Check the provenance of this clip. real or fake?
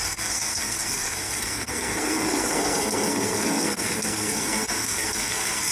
fake